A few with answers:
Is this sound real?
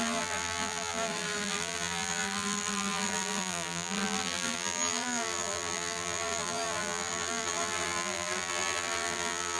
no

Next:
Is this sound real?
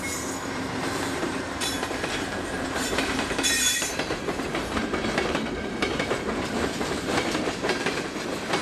no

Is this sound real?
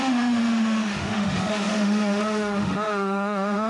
no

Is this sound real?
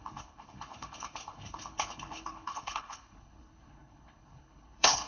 no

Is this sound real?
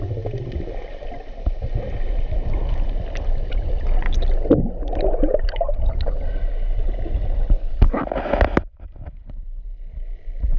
yes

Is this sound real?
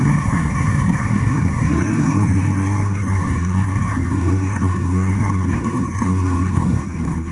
no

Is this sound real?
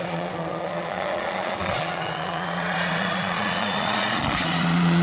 no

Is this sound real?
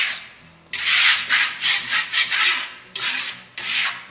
yes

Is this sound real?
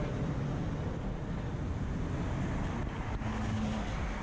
yes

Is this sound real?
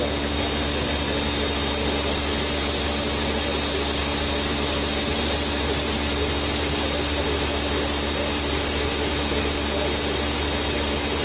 yes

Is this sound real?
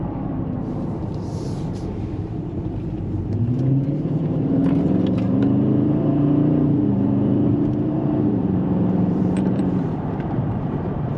no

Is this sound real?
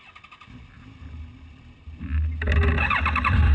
yes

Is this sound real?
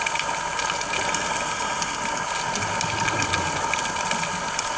yes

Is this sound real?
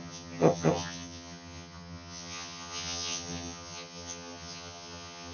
no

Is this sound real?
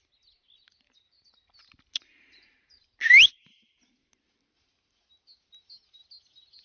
yes